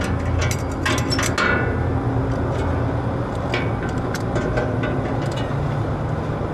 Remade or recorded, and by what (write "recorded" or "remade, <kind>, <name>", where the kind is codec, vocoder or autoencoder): recorded